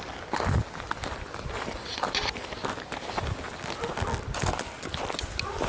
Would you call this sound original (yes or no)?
yes